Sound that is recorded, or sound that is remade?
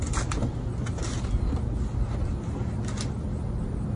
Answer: recorded